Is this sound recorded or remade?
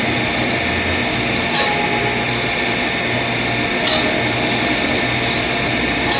recorded